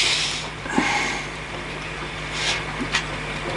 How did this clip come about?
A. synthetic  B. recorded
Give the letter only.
A